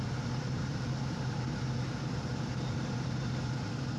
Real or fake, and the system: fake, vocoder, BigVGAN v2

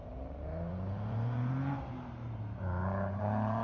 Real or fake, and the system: fake, vocoder, BigVGAN v2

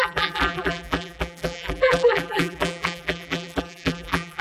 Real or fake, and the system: fake, vocoder, BigVGAN v2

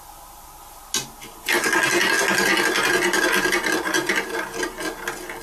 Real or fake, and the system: real